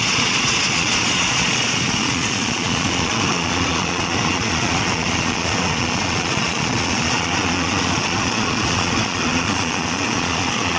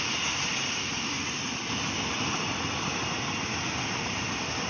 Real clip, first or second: second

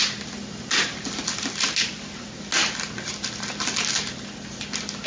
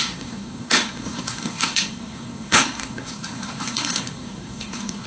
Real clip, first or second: first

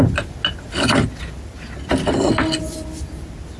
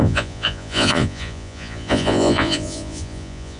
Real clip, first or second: first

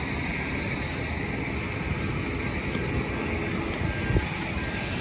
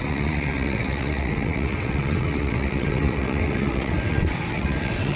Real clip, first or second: first